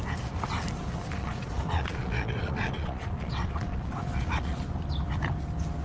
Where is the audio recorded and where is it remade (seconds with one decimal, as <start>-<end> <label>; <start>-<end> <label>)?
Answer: 0.0-1.2 recorded; 1.2-4.6 remade; 4.6-5.8 recorded